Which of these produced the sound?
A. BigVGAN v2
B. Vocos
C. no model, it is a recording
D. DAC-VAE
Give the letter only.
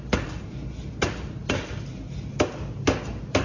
C